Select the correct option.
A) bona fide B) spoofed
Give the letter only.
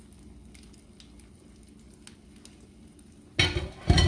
A